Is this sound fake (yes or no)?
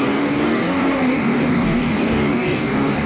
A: yes